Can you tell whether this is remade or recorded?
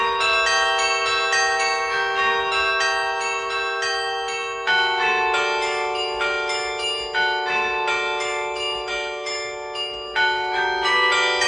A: recorded